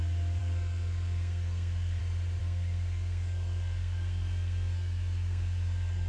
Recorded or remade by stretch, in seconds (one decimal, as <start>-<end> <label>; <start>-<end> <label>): 0.0-0.4 recorded; 0.4-2.0 remade; 2.0-2.4 recorded; 2.4-6.1 remade